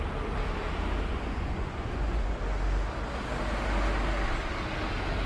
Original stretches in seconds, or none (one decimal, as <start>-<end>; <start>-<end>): 0.0-1.1; 2.4-5.3

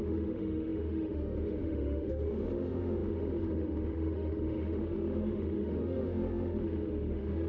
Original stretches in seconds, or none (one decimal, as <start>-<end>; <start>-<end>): none

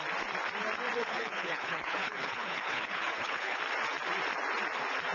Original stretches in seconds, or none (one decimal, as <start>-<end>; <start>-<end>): 0.0-1.0; 3.6-5.1

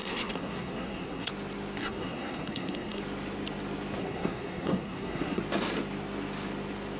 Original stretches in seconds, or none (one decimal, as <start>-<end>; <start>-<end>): 1.3-1.8; 3.0-4.0; 5.4-7.0

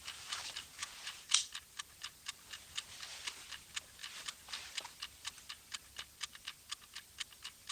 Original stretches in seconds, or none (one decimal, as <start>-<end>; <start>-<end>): 0.0-0.8; 1.5-7.7

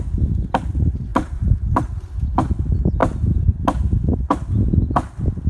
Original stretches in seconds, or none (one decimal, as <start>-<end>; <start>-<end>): 0.0-1.1; 1.8-5.5

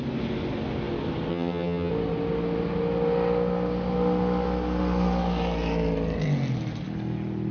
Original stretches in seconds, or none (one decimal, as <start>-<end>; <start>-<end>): 0.0-1.3; 1.9-7.5